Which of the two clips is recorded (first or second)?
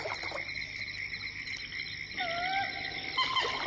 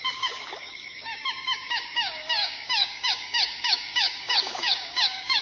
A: first